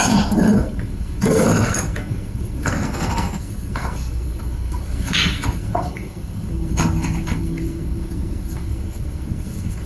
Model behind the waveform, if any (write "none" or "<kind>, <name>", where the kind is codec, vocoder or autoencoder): codec, SNAC